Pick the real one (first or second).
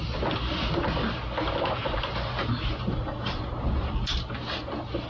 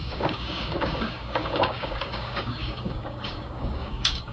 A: first